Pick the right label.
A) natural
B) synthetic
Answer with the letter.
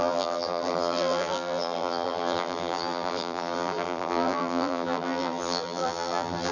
B